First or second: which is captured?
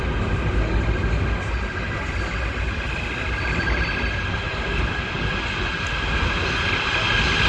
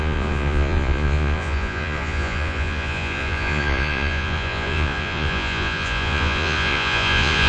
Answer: first